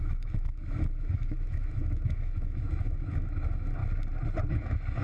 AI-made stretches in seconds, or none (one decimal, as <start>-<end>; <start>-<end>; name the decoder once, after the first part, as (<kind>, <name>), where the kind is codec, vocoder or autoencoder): 0.0-3.8 (autoencoder, DAC-VAE); 4.5-5.0